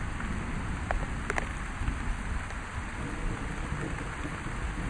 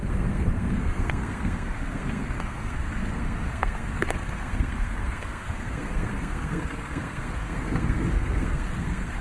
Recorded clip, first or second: first